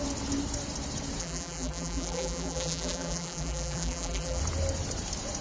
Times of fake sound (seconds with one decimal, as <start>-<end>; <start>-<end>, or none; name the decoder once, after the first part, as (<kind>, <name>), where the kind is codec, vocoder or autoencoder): 1.2-4.4 (vocoder, BigVGAN v2)